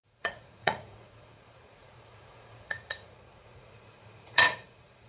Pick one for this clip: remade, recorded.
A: remade